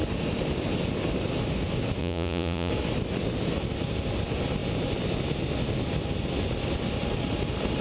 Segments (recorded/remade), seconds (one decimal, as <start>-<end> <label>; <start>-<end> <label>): 0.0-2.0 recorded; 2.0-2.7 remade; 2.7-7.8 recorded